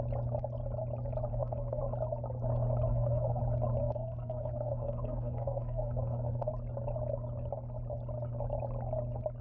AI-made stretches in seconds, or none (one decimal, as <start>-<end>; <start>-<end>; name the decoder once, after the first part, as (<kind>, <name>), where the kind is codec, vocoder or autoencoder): 1.3-1.8 (codec, SNAC); 2.9-3.4; 3.8-6.5